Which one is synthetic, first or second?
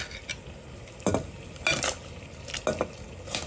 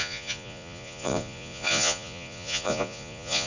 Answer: second